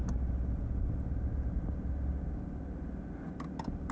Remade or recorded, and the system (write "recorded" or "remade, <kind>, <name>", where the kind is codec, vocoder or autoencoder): recorded